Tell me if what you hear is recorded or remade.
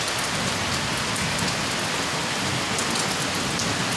recorded